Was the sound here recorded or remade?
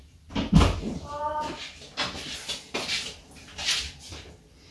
recorded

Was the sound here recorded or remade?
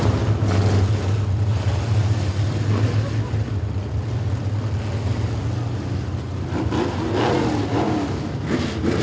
recorded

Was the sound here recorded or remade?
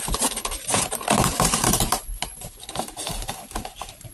remade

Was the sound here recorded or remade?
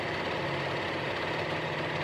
recorded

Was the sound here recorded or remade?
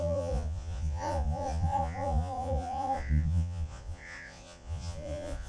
remade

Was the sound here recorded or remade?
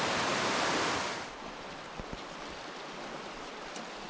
recorded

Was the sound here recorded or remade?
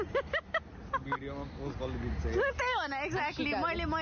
recorded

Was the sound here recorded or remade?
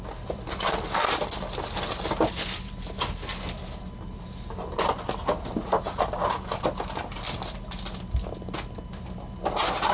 recorded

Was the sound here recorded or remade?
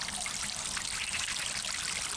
recorded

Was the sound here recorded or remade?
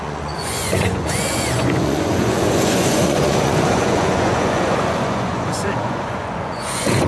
remade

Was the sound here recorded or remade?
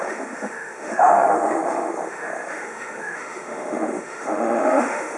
remade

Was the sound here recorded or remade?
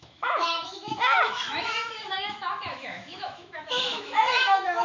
remade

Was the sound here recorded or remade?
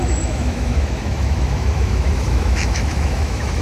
remade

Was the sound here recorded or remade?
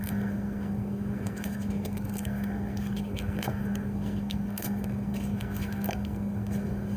remade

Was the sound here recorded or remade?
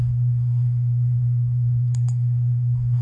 remade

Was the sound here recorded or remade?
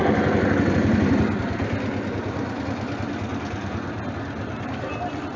recorded